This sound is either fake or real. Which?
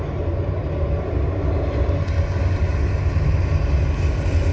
real